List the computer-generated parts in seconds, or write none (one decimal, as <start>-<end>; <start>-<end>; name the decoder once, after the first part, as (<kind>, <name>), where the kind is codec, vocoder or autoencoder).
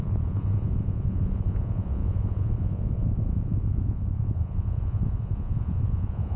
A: 0.0-6.4 (vocoder, Vocos)